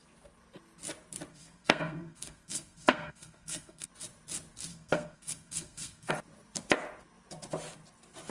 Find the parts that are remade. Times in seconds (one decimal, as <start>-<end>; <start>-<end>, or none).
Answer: 1.3-3.9; 4.7-6.1